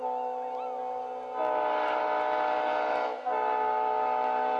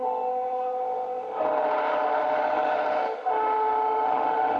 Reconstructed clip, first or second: second